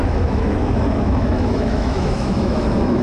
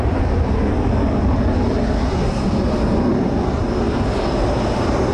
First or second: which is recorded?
second